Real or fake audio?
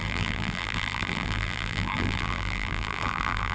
fake